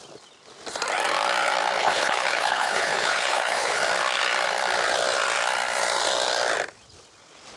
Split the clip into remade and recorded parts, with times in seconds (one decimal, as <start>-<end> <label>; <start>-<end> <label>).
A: 0.0-1.8 recorded; 1.8-3.8 remade; 3.8-7.6 recorded